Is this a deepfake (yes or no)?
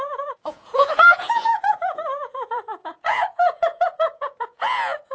yes